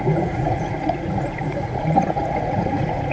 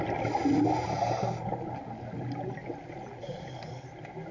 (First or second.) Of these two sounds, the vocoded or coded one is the first